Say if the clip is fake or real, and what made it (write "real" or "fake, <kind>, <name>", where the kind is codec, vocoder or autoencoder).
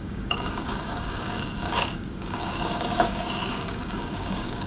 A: fake, codec, DAC